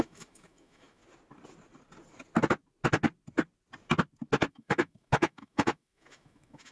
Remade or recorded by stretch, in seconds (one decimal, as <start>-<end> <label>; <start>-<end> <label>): 0.0-1.0 remade; 1.0-4.5 recorded; 4.5-6.7 remade